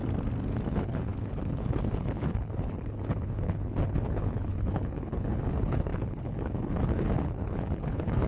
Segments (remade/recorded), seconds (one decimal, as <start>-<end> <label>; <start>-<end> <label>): 0.0-0.7 recorded; 0.7-8.3 remade